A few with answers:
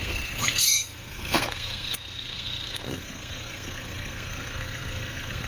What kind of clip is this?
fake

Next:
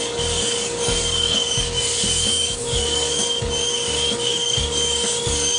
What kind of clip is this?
fake